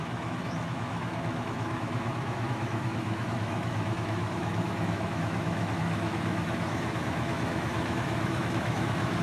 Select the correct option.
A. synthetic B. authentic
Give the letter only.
A